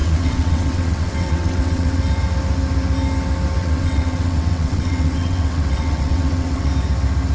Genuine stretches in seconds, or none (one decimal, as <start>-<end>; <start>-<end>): 2.0-3.6; 6.7-7.3